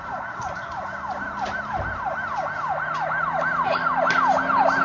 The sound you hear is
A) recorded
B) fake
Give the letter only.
A